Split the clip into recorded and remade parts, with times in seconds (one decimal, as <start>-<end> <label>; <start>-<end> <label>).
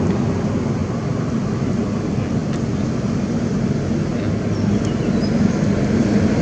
0.0-6.4 recorded